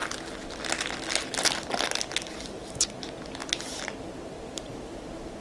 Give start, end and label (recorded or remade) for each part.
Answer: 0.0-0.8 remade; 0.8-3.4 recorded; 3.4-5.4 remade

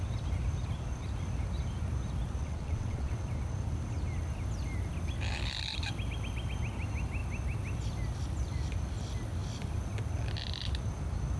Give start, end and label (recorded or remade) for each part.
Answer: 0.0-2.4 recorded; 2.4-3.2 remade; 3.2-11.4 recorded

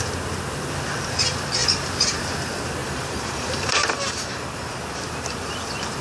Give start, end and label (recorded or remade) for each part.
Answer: 0.0-2.8 recorded; 2.8-4.7 remade; 4.7-6.0 recorded

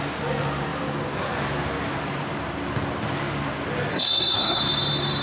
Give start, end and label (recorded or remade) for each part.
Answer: 0.0-3.9 recorded; 3.9-4.6 remade; 4.6-5.2 recorded